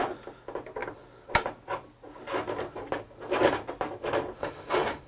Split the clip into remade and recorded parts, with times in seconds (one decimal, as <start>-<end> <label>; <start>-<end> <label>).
0.0-4.4 recorded; 4.4-5.1 remade